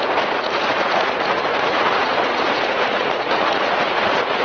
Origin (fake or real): fake